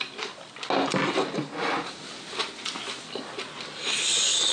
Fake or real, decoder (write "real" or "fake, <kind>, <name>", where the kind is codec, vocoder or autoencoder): real